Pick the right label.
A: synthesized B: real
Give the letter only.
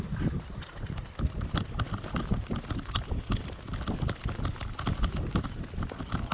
B